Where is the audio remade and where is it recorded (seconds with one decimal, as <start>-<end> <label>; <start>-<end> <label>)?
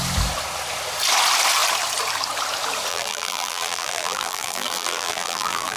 0.0-2.9 recorded; 2.9-5.8 remade